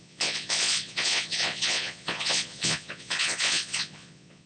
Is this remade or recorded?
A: remade